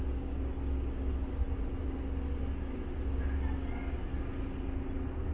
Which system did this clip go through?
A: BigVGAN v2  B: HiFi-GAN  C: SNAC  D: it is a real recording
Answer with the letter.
D